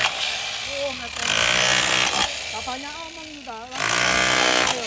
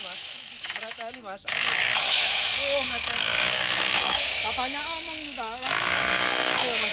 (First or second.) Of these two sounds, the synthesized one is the second